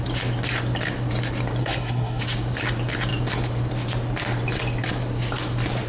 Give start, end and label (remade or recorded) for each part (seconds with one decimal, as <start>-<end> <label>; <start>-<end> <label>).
0.0-1.6 recorded; 1.6-2.2 remade; 2.2-5.9 recorded